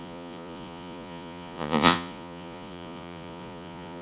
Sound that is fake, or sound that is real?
fake